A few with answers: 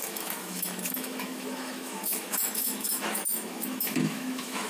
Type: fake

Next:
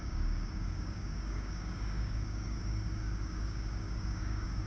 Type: fake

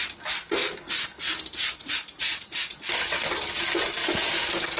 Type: real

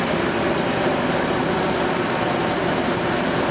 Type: real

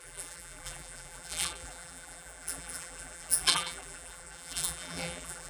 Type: fake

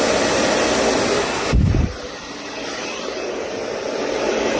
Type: real